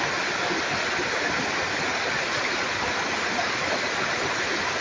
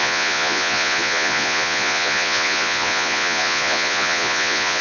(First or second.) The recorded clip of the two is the first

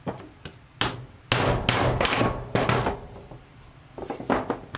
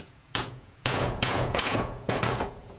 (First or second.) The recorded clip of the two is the first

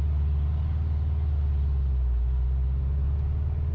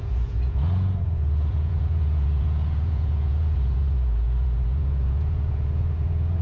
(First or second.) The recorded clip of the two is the first